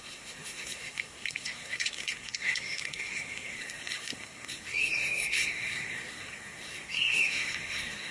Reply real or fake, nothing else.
fake